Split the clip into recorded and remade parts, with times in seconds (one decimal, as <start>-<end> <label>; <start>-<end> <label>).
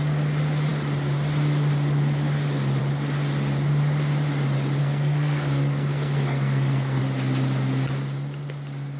0.0-4.8 recorded; 4.8-7.0 remade; 7.0-9.0 recorded